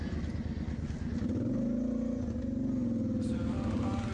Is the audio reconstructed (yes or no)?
no